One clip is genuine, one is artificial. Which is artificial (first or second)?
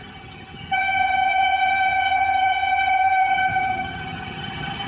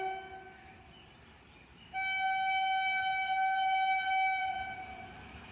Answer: first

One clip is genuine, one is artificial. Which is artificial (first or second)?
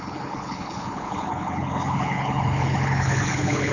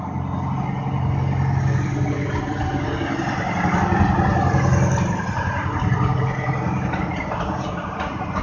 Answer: first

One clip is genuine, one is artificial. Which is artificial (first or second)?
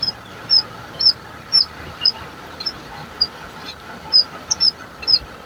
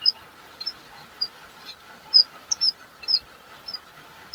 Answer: first